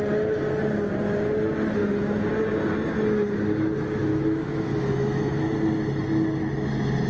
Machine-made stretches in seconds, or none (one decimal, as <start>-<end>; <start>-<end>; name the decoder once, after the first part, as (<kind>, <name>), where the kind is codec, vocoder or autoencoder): 4.0-5.4 (autoencoder, DAC-VAE)